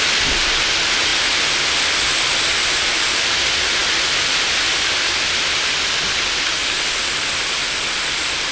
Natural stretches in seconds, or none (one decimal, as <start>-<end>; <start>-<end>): 0.0-8.5